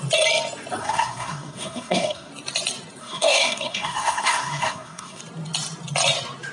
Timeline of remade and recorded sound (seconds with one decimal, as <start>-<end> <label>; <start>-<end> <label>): 0.0-0.8 recorded; 0.8-2.3 remade; 2.3-3.0 recorded; 3.0-5.2 remade; 5.2-6.5 recorded